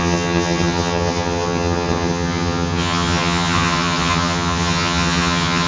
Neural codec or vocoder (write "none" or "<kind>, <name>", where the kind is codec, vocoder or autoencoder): vocoder, HiFi-GAN